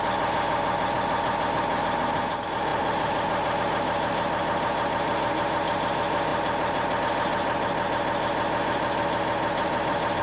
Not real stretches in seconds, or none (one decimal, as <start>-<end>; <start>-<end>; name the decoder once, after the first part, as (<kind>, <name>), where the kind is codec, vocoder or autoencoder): none